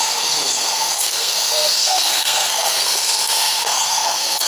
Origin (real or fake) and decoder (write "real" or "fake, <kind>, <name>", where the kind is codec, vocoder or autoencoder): fake, codec, SNAC